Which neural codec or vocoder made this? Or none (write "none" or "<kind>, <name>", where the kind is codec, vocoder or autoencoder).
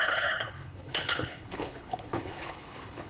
codec, HILCodec